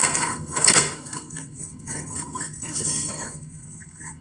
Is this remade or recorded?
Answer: remade